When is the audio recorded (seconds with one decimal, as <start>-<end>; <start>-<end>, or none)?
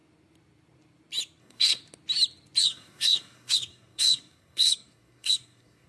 0.0-1.4; 1.8-2.6